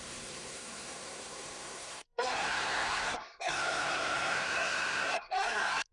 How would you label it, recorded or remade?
remade